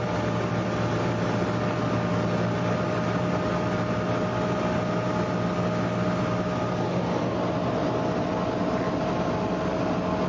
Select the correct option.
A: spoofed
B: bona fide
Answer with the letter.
B